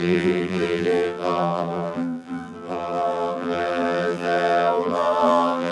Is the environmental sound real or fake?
fake